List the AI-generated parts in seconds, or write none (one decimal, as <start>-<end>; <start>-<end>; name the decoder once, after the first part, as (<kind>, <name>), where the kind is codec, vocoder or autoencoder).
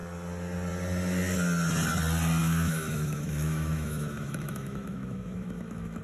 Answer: 2.4-6.0 (autoencoder, DAC-VAE)